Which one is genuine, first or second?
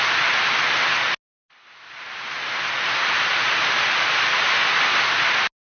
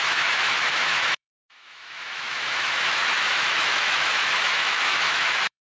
first